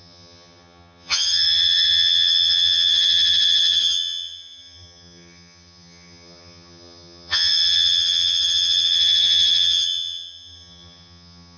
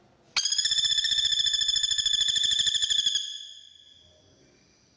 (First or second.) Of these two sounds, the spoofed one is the first